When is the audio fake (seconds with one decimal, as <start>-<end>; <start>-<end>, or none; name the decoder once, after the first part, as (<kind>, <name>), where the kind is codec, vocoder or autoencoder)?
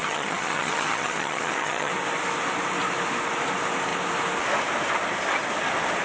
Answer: 0.0-1.9 (vocoder, HiFi-GAN)